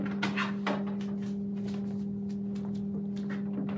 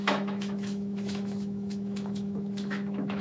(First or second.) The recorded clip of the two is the first